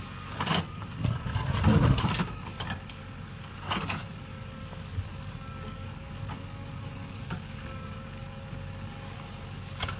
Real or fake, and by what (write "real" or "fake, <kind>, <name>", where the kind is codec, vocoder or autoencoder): fake, codec, DAC